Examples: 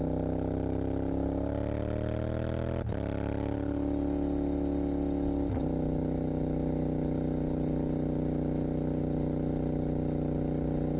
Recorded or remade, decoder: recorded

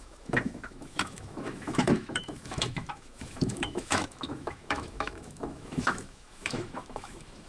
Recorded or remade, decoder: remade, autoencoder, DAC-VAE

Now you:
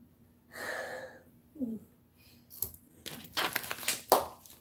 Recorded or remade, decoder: recorded